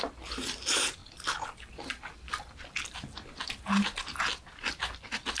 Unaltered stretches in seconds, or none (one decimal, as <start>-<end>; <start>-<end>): 0.0-5.4